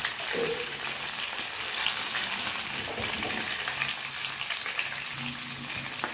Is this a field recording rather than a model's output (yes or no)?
yes